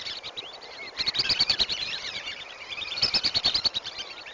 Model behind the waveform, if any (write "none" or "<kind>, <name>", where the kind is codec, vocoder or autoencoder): vocoder, BigVGAN v2